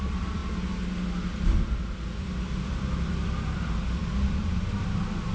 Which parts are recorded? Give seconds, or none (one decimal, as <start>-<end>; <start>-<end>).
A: 0.4-2.2; 4.0-4.7